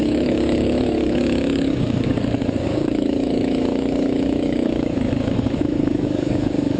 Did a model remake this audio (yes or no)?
yes